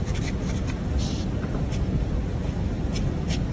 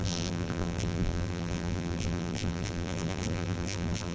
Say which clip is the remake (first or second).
second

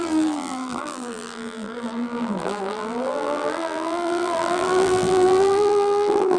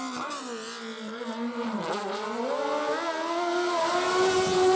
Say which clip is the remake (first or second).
first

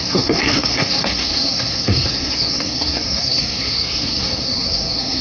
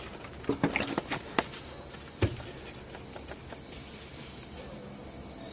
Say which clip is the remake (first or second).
first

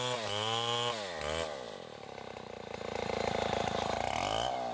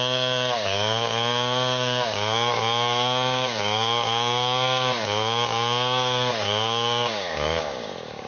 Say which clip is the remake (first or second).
second